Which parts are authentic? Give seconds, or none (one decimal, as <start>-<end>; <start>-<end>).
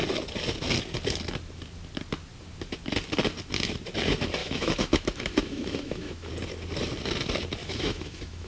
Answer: 0.0-4.4; 6.3-7.6